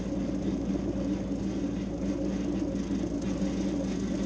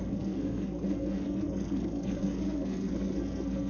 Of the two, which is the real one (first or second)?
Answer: first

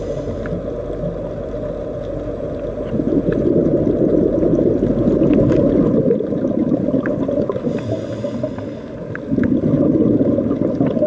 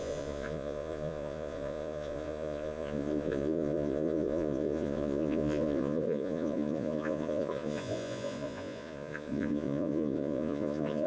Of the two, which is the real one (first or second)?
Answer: first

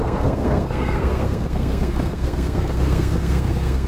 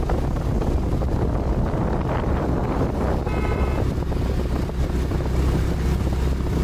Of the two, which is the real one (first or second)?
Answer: second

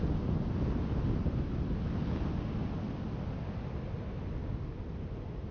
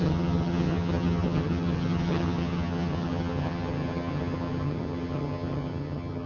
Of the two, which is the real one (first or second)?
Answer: first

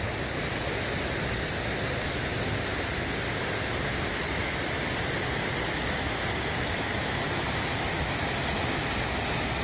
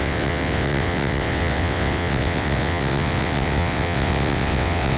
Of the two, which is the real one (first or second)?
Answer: first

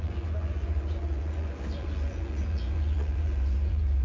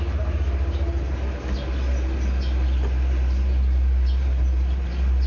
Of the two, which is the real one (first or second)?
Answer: second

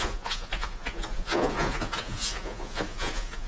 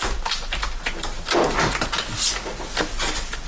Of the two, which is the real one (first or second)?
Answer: second